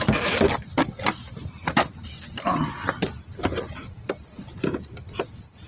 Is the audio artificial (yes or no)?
no